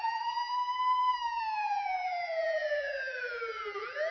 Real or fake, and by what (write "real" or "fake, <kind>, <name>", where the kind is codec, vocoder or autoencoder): fake, vocoder, BigVGAN v2